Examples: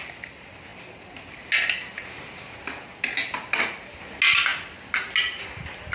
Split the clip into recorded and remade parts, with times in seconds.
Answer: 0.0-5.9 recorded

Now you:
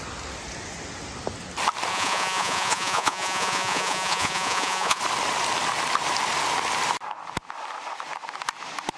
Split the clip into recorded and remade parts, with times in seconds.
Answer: 0.0-1.9 recorded; 1.9-5.0 remade; 5.0-9.0 recorded

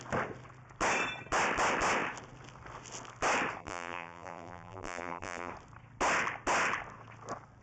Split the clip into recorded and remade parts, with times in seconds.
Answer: 0.0-3.6 recorded; 3.6-5.5 remade; 5.5-7.6 recorded

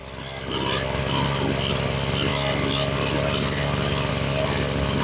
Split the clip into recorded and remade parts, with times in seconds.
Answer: 0.0-5.0 recorded

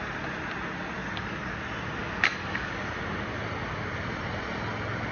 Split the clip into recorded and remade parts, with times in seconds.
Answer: 0.0-2.0 recorded; 2.0-2.7 remade; 2.7-5.1 recorded